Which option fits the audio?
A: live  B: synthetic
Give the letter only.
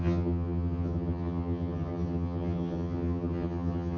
B